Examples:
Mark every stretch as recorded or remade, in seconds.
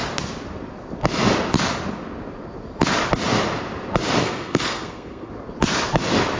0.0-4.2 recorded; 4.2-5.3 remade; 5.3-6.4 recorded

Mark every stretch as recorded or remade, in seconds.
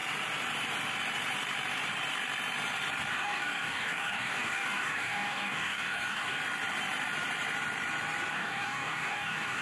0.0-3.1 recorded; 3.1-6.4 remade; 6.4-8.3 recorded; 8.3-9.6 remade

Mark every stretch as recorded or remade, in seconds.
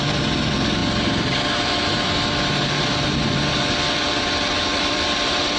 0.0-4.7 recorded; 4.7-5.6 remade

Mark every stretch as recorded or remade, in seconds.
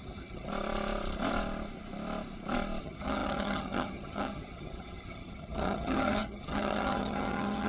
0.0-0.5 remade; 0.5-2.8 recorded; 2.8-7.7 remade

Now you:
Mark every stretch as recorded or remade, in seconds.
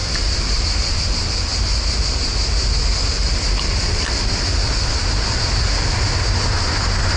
0.0-7.2 recorded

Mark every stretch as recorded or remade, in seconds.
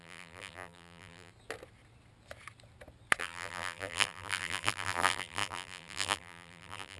0.0-1.3 remade; 1.3-3.2 recorded; 3.2-7.0 remade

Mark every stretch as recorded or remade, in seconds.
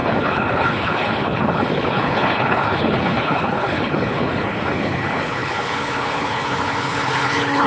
0.0-7.7 remade